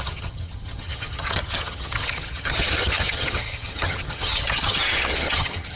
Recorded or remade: remade